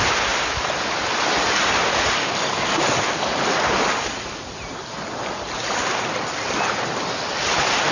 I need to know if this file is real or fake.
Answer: real